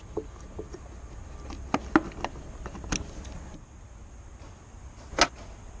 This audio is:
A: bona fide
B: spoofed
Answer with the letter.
A